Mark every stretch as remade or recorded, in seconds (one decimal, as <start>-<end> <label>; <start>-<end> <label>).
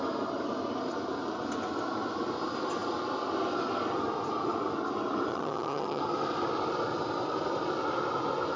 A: 0.0-5.3 recorded; 5.3-6.0 remade; 6.0-8.6 recorded